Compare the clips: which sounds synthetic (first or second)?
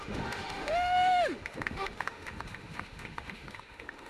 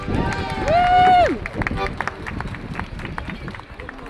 first